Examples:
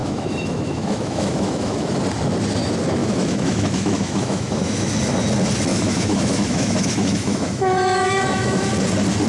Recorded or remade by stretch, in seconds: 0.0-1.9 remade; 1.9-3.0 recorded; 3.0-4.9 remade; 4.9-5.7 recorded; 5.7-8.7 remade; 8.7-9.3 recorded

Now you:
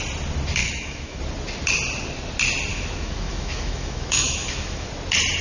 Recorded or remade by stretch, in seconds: 0.0-0.6 recorded; 0.6-1.2 remade; 1.2-2.7 recorded; 2.7-4.9 remade; 4.9-5.4 recorded

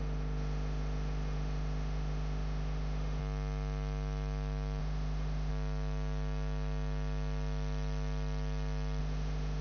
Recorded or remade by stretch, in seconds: 0.0-3.2 remade; 3.2-4.8 recorded; 4.8-5.5 remade; 5.5-9.0 recorded; 9.0-9.6 remade

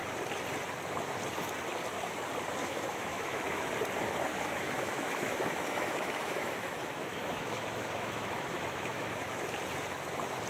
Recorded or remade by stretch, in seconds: 0.0-2.6 recorded; 2.6-3.7 remade; 3.7-4.3 recorded; 4.3-9.2 remade; 9.2-10.5 recorded

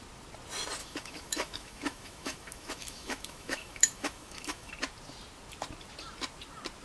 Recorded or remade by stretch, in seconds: 0.0-0.8 recorded; 0.8-4.7 remade; 4.7-6.8 recorded

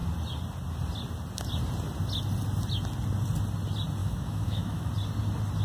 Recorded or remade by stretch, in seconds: 0.0-4.0 recorded; 4.0-4.9 remade; 4.9-5.6 recorded